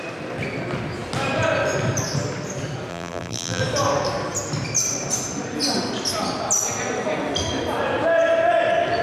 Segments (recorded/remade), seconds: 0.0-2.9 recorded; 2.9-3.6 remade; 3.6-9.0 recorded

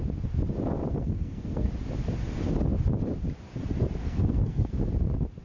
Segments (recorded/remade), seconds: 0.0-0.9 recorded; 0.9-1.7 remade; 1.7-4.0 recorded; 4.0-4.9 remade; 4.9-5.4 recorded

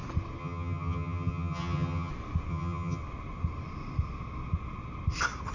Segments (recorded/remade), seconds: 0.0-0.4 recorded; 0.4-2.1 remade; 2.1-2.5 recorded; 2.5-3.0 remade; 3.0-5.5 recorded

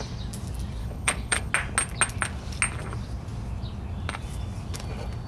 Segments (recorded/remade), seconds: 0.0-0.8 recorded; 0.8-1.5 remade; 1.5-5.3 recorded

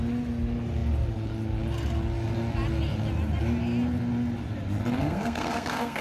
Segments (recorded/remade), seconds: 0.0-5.0 recorded; 5.0-6.0 remade

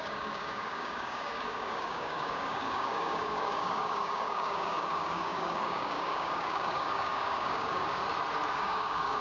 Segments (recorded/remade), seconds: 0.0-8.0 remade; 8.0-8.5 recorded; 8.5-9.2 remade